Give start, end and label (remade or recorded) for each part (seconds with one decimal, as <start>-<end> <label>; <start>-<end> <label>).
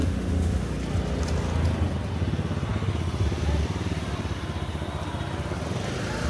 0.0-0.7 remade; 0.7-6.3 recorded